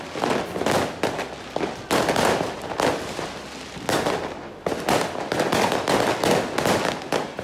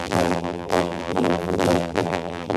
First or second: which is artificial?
second